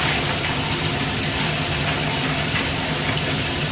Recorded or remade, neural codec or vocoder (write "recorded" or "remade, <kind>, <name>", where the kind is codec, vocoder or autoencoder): recorded